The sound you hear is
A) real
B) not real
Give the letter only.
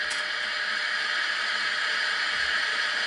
A